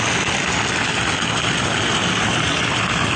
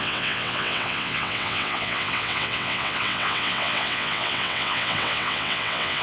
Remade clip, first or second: second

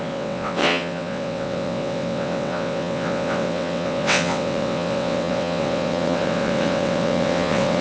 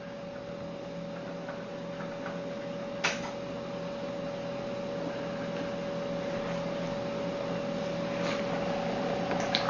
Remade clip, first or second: first